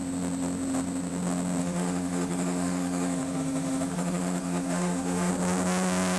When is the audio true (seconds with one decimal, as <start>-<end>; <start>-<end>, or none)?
0.0-1.6; 5.3-6.2